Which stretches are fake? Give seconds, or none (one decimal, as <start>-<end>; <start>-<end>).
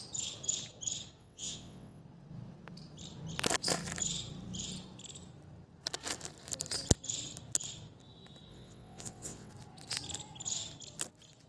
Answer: 1.2-2.0; 8.5-9.5